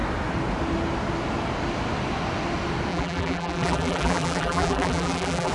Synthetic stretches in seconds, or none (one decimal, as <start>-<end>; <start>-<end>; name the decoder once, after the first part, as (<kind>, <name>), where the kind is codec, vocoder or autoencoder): 2.9-5.5 (vocoder, BigVGAN v2)

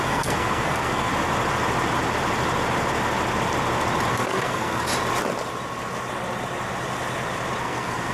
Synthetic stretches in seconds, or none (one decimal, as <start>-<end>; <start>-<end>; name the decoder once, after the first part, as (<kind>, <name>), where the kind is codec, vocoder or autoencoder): 0.0-1.1 (codec, SNAC); 4.1-4.9; 7.6-8.1

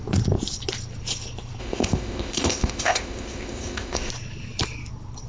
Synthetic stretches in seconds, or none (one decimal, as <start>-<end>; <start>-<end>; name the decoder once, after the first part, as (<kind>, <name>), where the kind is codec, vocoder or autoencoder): 1.6-4.1 (codec, ZipCodec)

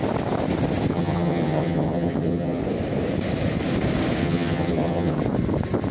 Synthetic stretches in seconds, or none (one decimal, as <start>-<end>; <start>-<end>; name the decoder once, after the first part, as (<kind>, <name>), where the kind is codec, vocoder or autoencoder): 0.9-2.6 (vocoder, HiFi-GAN); 4.2-5.2

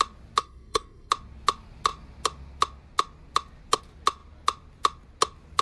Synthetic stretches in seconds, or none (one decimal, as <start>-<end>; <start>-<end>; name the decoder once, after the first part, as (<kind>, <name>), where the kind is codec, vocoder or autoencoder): 0.4-1.1 (codec, SNAC)

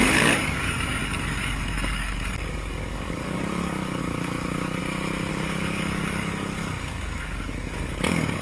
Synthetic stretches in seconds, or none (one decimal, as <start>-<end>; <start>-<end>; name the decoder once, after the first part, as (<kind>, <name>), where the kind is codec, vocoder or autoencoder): 0.0-4.8 (codec, DAC); 5.3-8.4

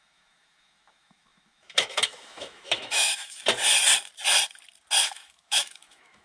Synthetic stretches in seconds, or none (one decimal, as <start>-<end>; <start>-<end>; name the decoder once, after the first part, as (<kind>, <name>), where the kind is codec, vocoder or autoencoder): 0.0-3.4 (autoencoder, DAC-VAE); 5.0-6.2

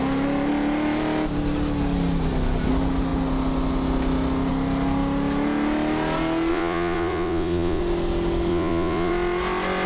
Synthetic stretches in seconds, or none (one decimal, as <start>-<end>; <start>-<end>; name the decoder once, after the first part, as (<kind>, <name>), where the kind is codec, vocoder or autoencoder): 6.5-7.8 (vocoder, Vocos); 8.5-9.1